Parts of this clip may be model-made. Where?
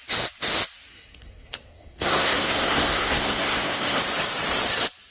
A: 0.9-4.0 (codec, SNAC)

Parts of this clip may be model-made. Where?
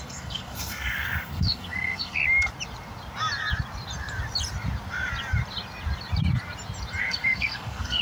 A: 0.0-2.2 (codec, SNAC); 7.0-8.0